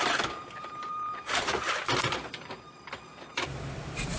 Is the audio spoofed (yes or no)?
yes